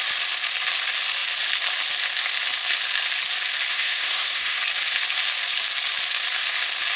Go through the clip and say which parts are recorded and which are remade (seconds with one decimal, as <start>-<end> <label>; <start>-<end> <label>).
0.0-3.7 recorded; 3.7-4.6 remade; 4.6-7.0 recorded